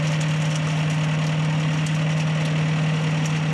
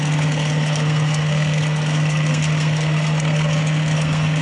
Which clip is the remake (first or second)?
second